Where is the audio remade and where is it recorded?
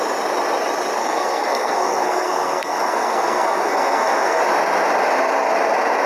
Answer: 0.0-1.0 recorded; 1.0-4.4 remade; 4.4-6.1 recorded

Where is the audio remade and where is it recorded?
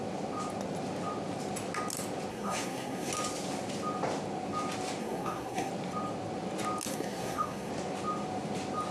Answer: 0.0-2.3 recorded; 2.3-3.1 remade; 3.1-5.0 recorded; 5.0-5.7 remade; 5.7-6.9 recorded; 6.9-7.7 remade; 7.7-8.9 recorded